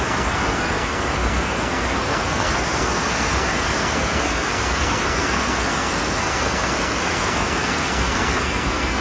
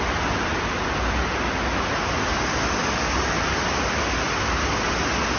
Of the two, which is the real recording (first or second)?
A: second